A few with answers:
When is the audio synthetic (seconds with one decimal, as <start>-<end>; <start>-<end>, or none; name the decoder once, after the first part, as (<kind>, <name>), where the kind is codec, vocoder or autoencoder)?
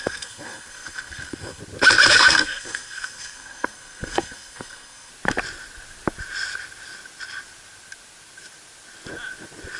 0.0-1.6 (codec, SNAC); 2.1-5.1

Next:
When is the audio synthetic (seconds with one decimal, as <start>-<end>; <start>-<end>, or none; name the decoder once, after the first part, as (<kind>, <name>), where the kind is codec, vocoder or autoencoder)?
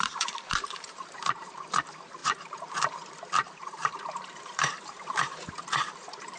0.0-6.4 (vocoder, BigVGAN v2)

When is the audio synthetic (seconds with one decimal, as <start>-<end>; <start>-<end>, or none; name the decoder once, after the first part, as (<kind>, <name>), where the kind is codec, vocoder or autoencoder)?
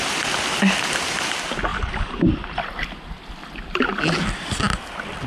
none